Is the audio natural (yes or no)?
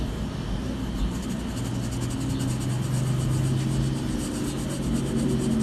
yes